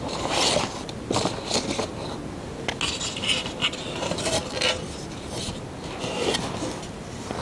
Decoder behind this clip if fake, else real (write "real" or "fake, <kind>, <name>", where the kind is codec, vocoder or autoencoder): real